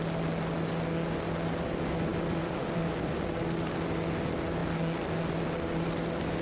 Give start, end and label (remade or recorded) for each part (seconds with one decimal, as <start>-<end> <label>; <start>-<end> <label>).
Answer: 0.0-2.1 recorded; 2.1-3.7 remade; 3.7-6.4 recorded